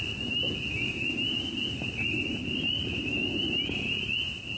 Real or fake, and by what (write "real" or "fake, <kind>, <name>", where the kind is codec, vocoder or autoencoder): real